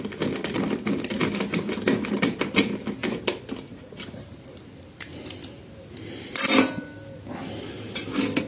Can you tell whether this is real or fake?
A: real